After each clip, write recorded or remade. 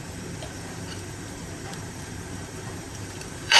remade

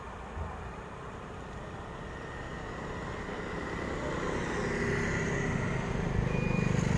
recorded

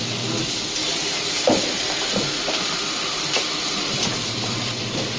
recorded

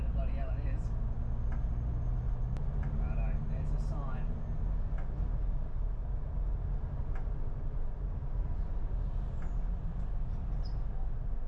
recorded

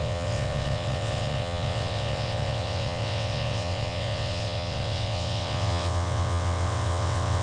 remade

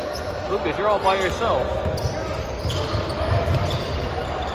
recorded